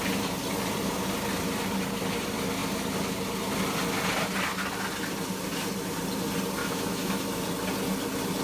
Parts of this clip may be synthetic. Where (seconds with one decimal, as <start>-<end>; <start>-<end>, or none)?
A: 6.6-7.3